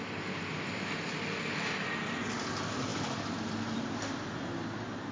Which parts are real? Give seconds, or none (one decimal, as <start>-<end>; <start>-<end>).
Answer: 0.0-5.1